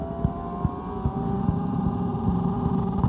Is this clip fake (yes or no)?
yes